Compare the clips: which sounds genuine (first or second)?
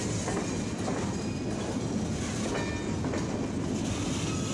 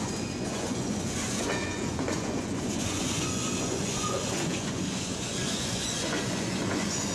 first